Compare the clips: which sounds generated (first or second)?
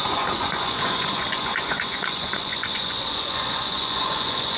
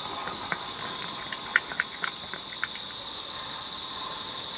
first